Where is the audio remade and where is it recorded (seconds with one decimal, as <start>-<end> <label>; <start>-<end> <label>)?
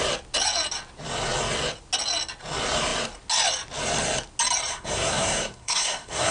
0.0-4.7 recorded; 4.7-6.3 remade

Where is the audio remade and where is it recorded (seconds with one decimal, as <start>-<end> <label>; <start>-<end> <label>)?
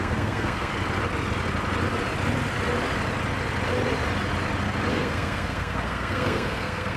0.0-0.7 remade; 0.7-4.9 recorded; 4.9-7.0 remade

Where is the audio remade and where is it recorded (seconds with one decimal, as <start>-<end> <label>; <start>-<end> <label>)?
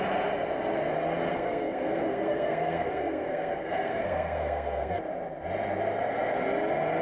0.0-1.3 recorded; 1.3-5.0 remade; 5.0-7.0 recorded